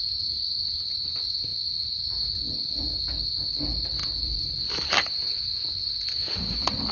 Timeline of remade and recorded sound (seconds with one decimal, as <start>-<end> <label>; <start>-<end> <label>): 0.0-4.0 recorded; 4.0-5.2 remade; 5.2-6.9 recorded